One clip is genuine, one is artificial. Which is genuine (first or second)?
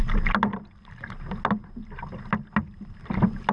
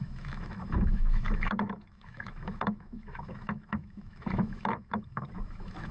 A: first